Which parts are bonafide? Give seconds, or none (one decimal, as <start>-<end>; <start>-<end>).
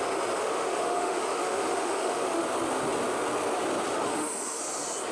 0.0-0.4; 2.4-3.9; 4.6-5.1